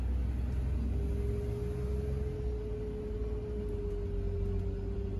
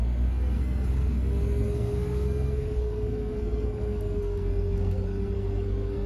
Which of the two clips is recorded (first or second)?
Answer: first